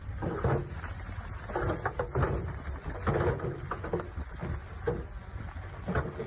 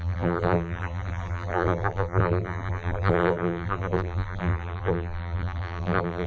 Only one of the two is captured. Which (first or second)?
first